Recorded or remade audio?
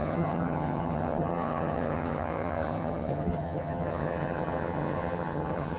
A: remade